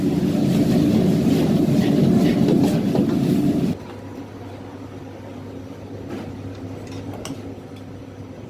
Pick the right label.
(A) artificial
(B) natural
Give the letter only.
B